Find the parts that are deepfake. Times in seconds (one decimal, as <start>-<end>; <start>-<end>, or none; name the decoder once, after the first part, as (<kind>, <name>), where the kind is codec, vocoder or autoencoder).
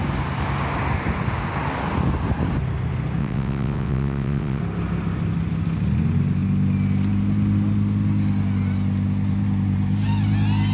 3.2-4.6 (vocoder, WaveNeXt)